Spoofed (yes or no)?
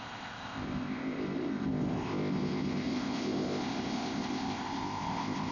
yes